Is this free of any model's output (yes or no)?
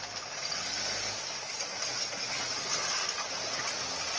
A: yes